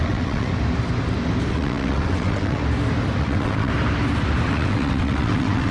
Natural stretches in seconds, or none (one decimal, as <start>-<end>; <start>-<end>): 0.5-1.5; 2.6-3.2; 3.7-4.4